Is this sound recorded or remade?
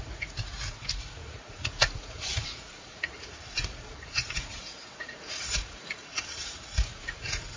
remade